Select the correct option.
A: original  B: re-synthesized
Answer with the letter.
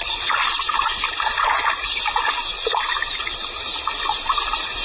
A